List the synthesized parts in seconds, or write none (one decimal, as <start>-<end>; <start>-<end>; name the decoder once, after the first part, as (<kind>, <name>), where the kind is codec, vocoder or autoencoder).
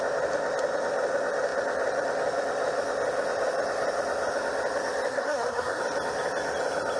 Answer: 5.1-5.8 (codec, SNAC)